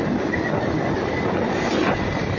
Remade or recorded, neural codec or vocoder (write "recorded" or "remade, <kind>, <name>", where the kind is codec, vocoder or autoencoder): recorded